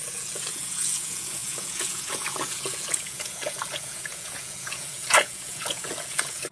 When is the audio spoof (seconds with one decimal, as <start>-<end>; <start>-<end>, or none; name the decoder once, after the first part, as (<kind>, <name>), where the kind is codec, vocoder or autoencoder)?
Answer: 0.0-6.5 (vocoder, Vocos)